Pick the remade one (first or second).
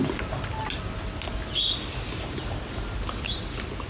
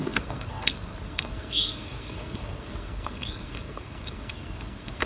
second